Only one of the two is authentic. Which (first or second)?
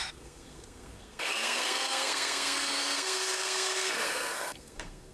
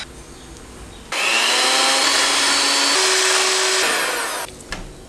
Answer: second